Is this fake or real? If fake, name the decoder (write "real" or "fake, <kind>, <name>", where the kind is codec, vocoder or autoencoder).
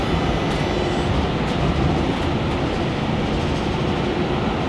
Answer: real